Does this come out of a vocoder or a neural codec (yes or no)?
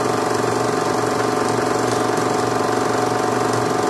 no